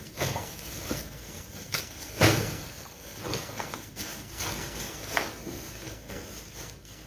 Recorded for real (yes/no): no